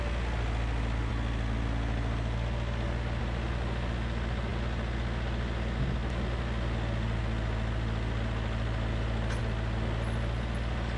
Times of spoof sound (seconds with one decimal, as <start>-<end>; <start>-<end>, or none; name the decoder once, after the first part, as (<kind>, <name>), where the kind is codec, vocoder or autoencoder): none